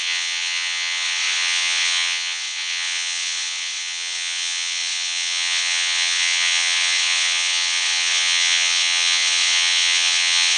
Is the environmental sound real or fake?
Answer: fake